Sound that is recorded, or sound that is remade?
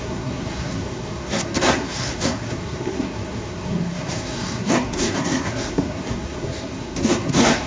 remade